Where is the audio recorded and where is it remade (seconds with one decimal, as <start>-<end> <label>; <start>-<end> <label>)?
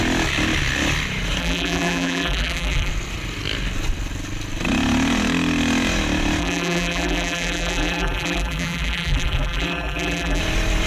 0.0-1.4 recorded; 1.4-2.9 remade; 2.9-6.4 recorded; 6.4-10.4 remade; 10.4-10.9 recorded